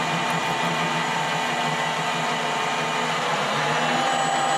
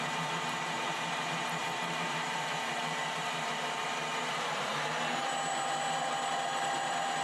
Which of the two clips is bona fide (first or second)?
first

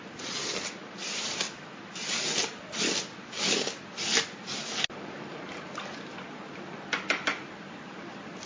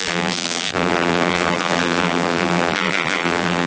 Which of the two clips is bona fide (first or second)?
first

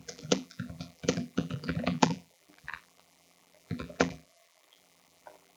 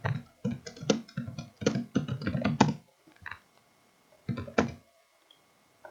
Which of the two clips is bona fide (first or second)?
second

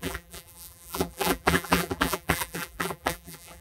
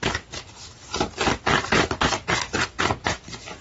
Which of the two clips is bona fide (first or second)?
second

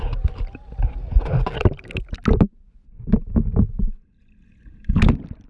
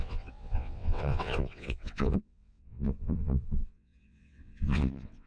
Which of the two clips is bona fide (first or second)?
first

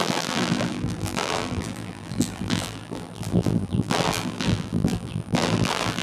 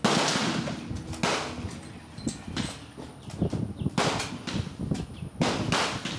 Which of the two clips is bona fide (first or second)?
second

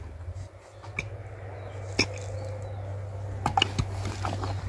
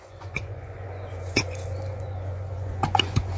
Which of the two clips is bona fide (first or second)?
first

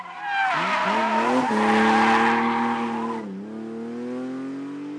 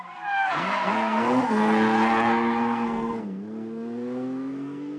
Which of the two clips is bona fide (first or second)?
first